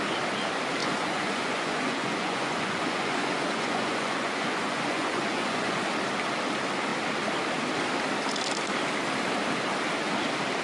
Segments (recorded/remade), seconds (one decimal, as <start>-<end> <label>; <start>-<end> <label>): 0.0-0.8 recorded; 0.8-5.8 remade; 5.8-10.6 recorded